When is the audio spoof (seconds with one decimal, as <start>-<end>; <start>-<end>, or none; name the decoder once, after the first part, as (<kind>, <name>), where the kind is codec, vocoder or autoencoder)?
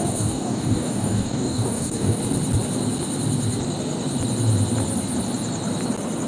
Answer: 0.0-2.2 (codec, DAC)